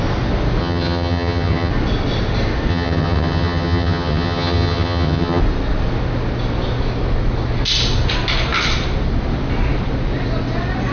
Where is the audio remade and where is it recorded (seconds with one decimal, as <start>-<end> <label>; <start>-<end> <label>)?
0.0-0.6 recorded; 0.6-1.7 remade; 1.7-2.7 recorded; 2.7-5.4 remade; 5.4-10.9 recorded